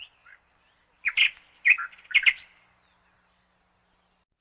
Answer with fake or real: real